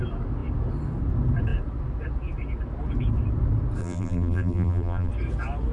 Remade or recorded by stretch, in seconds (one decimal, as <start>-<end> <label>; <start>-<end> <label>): 0.0-3.8 recorded; 3.8-5.1 remade; 5.1-5.7 recorded

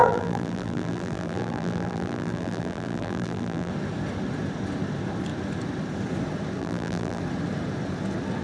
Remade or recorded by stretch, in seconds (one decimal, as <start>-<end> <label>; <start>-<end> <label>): 0.0-3.7 remade; 3.7-6.6 recorded; 6.6-7.2 remade; 7.2-8.4 recorded